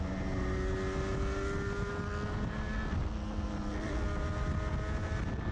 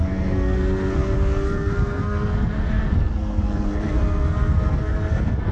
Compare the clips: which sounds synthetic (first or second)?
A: second